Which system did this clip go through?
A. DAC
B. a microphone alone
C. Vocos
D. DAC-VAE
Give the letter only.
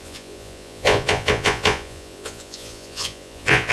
C